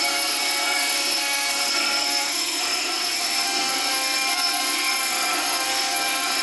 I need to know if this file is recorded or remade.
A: remade